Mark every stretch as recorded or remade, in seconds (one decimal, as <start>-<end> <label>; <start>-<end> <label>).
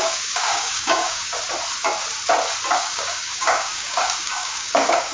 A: 0.0-1.3 remade; 1.3-2.8 recorded; 2.8-5.1 remade